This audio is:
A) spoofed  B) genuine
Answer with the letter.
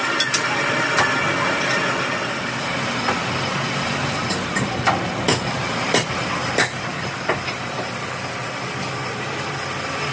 B